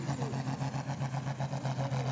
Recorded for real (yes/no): yes